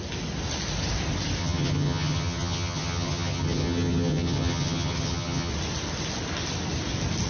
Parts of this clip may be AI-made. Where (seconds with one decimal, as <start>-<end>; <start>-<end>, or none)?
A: 1.4-5.5